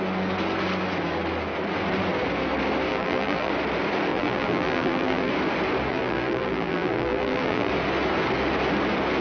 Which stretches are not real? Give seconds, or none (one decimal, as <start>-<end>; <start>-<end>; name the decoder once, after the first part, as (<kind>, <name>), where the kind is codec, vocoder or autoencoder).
2.9-3.5 (vocoder, BigVGAN v2); 4.1-5.3; 5.9-7.7